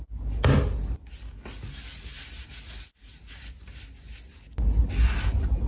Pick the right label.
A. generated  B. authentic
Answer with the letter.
B